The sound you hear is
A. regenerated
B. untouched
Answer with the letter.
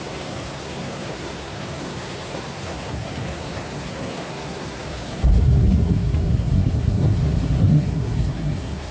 A